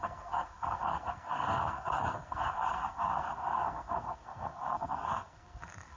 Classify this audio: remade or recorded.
remade